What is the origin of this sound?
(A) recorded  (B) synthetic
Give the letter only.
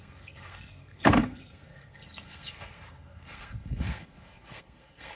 B